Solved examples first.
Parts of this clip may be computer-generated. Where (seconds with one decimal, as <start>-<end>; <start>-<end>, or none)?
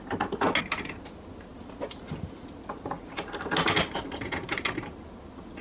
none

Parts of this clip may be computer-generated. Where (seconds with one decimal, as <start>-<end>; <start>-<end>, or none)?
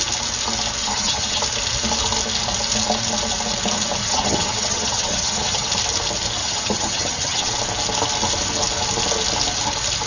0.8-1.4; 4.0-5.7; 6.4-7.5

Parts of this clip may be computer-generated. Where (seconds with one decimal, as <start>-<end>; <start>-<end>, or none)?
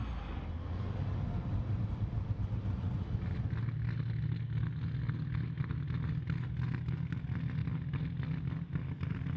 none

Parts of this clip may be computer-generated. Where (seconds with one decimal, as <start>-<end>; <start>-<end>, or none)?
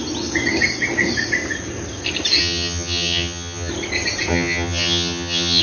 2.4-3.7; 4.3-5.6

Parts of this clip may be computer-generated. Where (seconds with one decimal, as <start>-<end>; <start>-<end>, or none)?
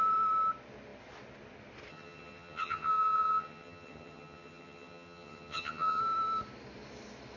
1.9-6.0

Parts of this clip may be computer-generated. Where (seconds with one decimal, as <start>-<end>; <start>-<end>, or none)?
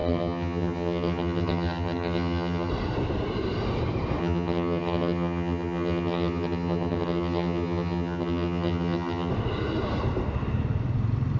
0.0-2.7; 4.2-9.3